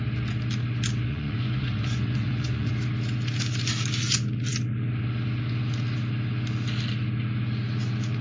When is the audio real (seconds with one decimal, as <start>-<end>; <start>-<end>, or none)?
0.0-1.1; 2.7-8.2